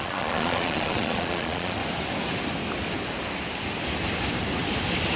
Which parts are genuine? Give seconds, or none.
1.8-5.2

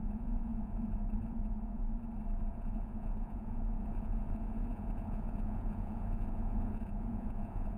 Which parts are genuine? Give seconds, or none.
1.8-2.5

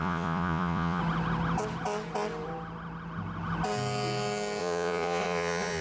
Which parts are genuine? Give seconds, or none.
1.0-4.6

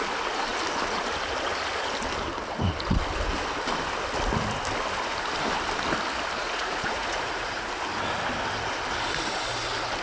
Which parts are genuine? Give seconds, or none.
0.0-6.4; 7.7-10.0

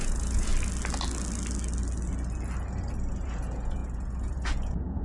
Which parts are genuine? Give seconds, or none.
0.5-3.1

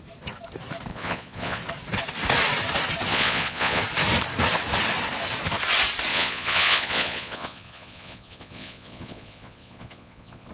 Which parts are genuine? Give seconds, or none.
0.0-0.9; 1.6-3.1; 3.8-6.1

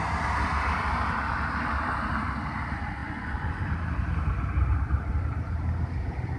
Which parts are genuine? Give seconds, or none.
0.0-3.0; 3.6-6.4